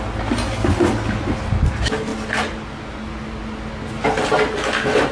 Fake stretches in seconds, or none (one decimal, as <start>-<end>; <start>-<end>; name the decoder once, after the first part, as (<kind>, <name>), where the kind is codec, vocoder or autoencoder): none

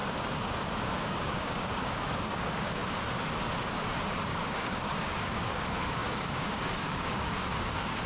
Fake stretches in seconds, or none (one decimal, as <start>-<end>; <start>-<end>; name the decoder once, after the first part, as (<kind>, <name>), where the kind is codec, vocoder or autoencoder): 0.0-2.8 (codec, DAC); 4.2-8.1

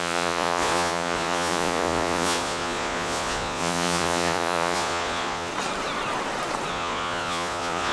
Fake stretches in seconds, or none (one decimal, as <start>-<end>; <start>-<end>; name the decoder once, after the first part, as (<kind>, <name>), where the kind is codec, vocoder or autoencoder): 0.0-5.5 (vocoder, Vocos); 6.7-7.9

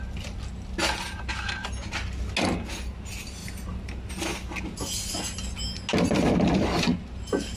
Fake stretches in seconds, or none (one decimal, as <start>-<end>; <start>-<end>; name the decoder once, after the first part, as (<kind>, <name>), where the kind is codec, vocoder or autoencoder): 3.4-4.1 (vocoder, BigVGAN v2); 6.9-7.6